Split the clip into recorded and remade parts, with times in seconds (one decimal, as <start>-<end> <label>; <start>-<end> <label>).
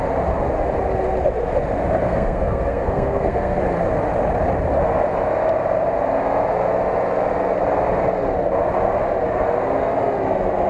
0.0-2.0 recorded; 2.0-3.6 remade; 3.6-10.7 recorded